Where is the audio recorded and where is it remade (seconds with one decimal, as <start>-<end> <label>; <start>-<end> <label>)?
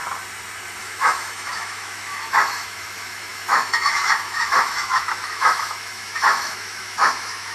0.0-0.8 recorded; 0.8-7.5 remade